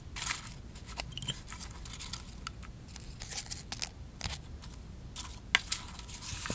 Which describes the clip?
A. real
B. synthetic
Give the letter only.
A